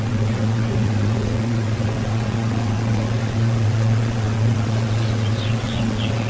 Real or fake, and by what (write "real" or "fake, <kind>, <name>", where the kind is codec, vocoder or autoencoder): fake, vocoder, WaveNeXt